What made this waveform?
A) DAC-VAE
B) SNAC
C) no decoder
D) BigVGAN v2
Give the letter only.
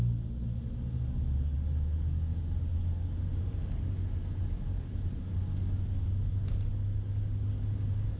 C